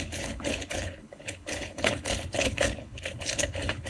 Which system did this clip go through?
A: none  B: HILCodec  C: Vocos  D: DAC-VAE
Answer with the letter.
B